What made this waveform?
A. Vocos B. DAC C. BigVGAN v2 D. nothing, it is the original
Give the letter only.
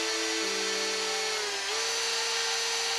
D